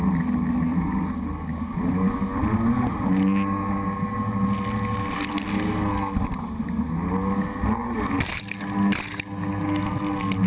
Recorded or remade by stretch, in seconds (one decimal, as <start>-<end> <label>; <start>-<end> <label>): 0.0-10.5 recorded

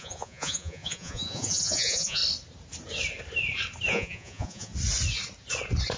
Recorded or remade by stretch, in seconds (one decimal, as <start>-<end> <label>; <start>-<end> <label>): 0.0-2.2 remade; 2.2-3.9 recorded; 3.9-4.7 remade; 4.7-6.0 recorded

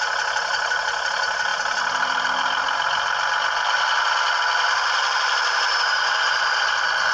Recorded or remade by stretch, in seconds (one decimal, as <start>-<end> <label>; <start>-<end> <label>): 0.0-7.1 recorded

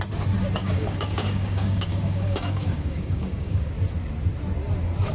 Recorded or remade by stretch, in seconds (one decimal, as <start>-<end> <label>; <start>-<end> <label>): 0.0-0.6 recorded; 0.6-3.7 remade; 3.7-5.1 recorded

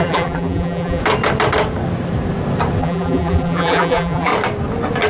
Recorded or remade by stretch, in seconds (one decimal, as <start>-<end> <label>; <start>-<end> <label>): 0.0-1.0 remade; 1.0-2.8 recorded; 2.8-4.3 remade; 4.3-5.1 recorded